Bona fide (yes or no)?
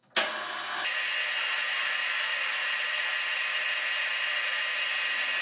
yes